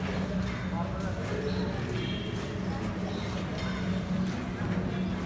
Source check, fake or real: real